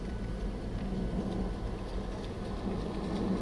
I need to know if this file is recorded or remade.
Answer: recorded